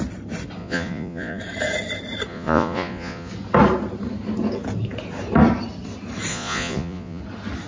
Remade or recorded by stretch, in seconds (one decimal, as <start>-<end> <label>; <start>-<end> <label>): 0.0-0.6 recorded; 0.6-1.4 remade; 1.4-2.3 recorded; 2.3-3.3 remade; 3.3-6.3 recorded; 6.3-7.2 remade; 7.2-7.7 recorded